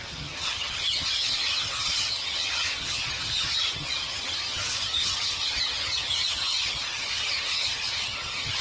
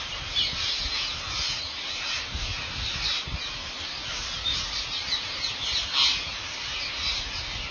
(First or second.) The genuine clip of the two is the second